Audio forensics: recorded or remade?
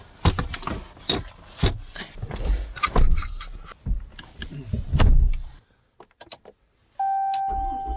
recorded